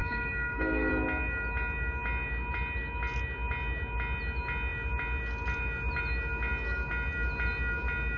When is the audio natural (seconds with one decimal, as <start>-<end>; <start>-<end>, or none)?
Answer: 0.9-8.2